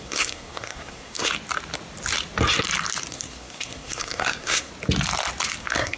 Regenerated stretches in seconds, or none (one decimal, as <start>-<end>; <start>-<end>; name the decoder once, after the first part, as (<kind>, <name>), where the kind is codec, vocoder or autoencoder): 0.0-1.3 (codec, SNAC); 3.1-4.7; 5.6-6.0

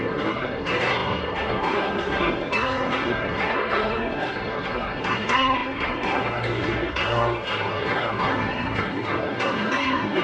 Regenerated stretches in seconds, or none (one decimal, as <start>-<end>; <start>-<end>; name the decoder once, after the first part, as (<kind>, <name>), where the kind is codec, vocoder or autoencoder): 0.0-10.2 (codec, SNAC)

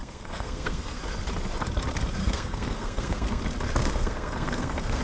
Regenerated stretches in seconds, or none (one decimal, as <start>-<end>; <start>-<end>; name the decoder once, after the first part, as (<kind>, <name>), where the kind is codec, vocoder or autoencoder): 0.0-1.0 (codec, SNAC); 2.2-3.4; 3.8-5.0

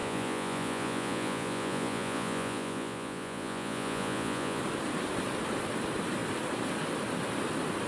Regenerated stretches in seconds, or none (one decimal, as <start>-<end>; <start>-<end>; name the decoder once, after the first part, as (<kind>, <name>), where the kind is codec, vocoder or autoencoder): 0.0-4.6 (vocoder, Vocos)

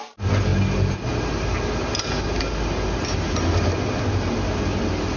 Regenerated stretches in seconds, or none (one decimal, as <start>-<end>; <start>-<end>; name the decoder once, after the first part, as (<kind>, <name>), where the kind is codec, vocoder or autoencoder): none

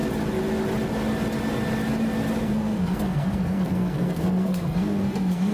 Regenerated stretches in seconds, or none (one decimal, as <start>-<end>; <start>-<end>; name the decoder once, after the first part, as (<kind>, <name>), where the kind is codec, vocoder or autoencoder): 2.4-5.5 (codec, SNAC)

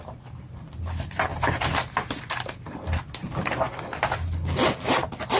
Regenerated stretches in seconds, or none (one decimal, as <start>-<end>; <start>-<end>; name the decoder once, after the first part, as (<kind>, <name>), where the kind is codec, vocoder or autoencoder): none